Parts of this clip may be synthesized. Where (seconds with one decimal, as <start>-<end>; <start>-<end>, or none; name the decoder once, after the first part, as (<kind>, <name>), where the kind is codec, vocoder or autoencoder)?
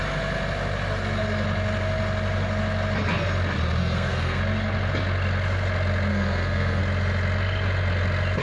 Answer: 3.8-4.4 (codec, SNAC); 6.1-6.8